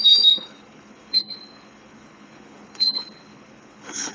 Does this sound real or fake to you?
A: fake